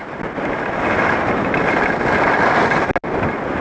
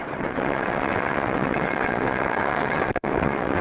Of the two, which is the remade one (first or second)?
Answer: second